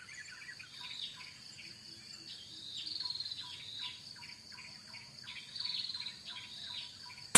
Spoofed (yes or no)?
no